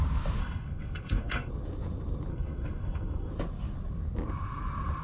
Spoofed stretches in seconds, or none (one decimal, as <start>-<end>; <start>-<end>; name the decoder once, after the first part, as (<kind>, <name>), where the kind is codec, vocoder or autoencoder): 0.4-1.5 (codec, SNAC); 2.3-3.3